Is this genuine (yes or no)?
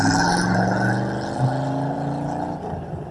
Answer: yes